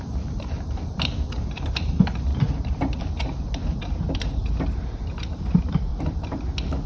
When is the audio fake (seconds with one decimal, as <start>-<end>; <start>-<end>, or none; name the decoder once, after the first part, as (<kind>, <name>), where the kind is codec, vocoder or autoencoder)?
0.0-2.3 (vocoder, BigVGAN v2); 3.0-5.9